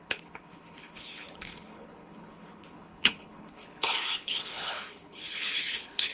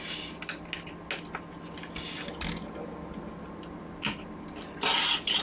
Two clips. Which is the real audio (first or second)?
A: second